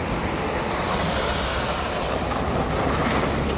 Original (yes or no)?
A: yes